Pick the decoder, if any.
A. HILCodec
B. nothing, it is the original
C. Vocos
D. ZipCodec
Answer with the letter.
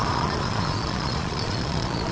C